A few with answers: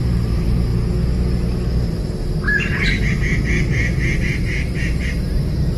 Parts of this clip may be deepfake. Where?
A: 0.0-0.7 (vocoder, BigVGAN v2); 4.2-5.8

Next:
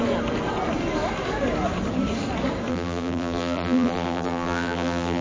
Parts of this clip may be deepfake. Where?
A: 2.7-5.2 (vocoder, BigVGAN v2)

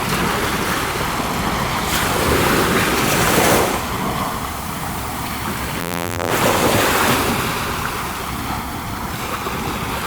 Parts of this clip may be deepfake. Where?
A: 5.8-6.3 (vocoder, BigVGAN v2)

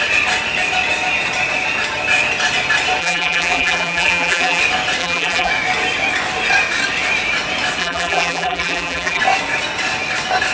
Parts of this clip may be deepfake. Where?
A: 3.0-4.6 (vocoder, BigVGAN v2); 5.0-5.5; 7.8-9.2